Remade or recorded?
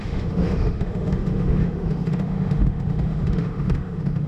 remade